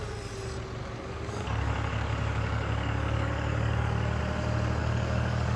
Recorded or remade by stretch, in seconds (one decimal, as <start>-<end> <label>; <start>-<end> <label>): 0.0-0.8 recorded; 0.8-4.2 remade; 4.2-4.8 recorded; 4.8-5.6 remade